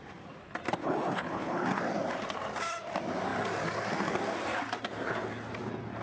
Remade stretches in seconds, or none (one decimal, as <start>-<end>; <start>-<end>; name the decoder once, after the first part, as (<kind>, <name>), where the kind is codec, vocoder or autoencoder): 0.8-1.8 (codec, HILCodec)